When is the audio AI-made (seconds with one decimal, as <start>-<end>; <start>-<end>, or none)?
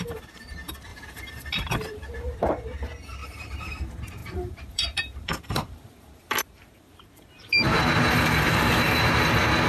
0.9-2.5; 3.2-3.8; 4.2-9.2